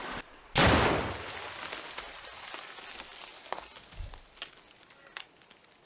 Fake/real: real